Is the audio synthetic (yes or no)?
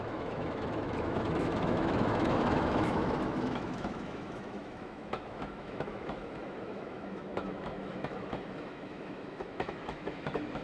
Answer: yes